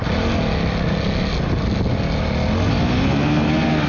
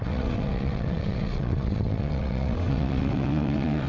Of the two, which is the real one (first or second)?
first